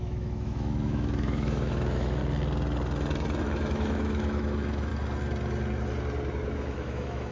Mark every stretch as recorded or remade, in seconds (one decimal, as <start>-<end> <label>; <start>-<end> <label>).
0.0-2.2 remade; 2.2-3.4 recorded; 3.4-4.9 remade; 4.9-6.5 recorded; 6.5-7.3 remade